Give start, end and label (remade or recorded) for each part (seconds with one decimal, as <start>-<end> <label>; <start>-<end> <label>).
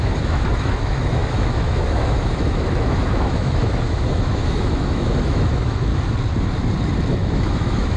0.0-5.9 remade; 5.9-7.1 recorded; 7.1-8.0 remade